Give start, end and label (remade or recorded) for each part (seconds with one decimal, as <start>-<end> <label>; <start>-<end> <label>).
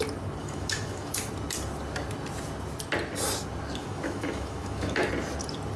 0.0-0.4 recorded; 0.4-1.3 remade; 1.3-3.8 recorded; 3.8-5.1 remade; 5.1-5.8 recorded